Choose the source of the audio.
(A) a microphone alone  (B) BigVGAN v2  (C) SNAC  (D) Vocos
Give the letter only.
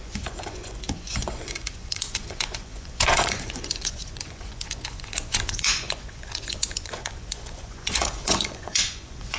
D